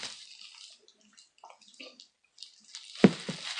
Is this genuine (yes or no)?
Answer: yes